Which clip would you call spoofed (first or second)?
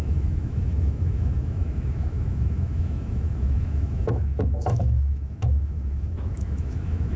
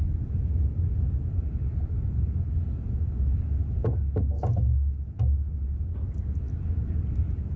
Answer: first